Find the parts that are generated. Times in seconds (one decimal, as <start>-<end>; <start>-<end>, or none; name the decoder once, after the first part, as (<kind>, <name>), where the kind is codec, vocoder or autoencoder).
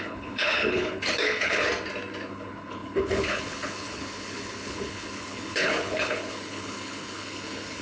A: 0.0-1.7 (codec, HILCodec); 2.3-7.8